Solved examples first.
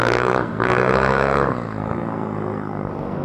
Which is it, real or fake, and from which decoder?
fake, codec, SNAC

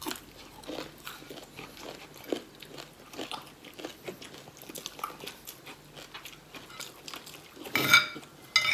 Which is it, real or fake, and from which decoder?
real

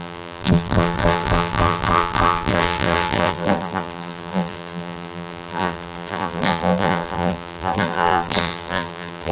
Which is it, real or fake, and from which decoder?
fake, vocoder, BigVGAN v2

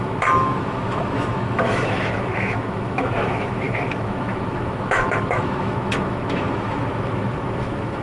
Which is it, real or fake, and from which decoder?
fake, autoencoder, DAC-VAE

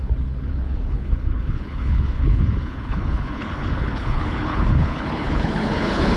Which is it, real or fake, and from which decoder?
fake, codec, HILCodec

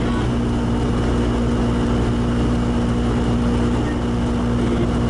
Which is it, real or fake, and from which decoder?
real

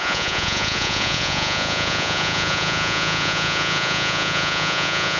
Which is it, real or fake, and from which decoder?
fake, vocoder, Vocos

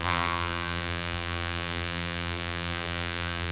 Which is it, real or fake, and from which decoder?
fake, vocoder, BigVGAN v2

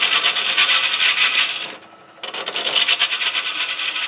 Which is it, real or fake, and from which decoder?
real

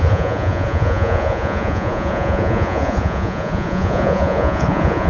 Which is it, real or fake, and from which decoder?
fake, vocoder, Vocos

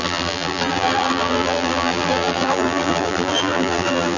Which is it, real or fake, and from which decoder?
fake, vocoder, BigVGAN v2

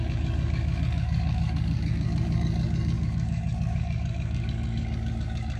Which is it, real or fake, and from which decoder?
fake, codec, DAC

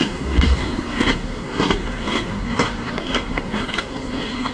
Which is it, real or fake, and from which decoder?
fake, codec, SNAC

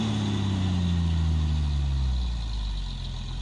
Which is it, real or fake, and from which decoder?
real